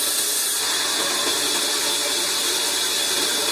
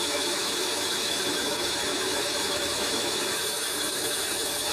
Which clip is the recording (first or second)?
first